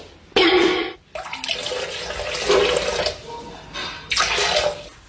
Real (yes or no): yes